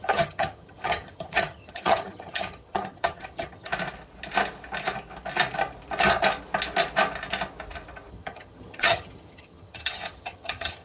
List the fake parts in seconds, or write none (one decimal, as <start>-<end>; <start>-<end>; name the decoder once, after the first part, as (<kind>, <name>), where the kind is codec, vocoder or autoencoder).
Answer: 0.0-3.7 (vocoder, HiFi-GAN); 8.1-10.8